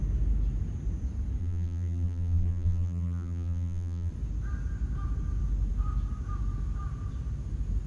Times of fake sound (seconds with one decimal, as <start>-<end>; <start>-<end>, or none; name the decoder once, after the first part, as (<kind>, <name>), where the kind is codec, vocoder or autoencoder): 1.4-4.1 (vocoder, BigVGAN v2)